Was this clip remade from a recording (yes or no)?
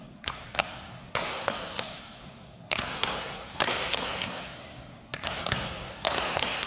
yes